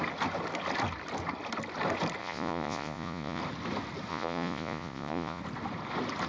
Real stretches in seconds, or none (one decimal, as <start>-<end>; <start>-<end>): 0.0-2.2; 3.4-4.1; 5.4-6.3